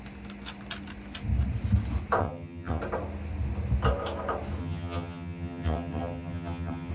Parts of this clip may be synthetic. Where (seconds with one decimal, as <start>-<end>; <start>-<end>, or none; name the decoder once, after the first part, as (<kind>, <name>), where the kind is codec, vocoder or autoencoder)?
2.2-2.8 (vocoder, HiFi-GAN); 4.6-6.9